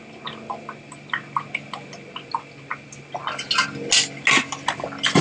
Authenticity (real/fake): real